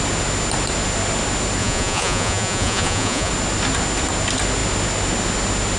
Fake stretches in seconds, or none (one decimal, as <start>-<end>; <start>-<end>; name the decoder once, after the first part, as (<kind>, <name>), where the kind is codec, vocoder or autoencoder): 1.6-3.3 (vocoder, Vocos)